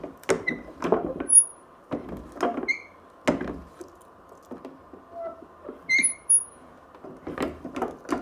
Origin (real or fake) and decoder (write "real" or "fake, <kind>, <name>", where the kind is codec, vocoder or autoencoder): real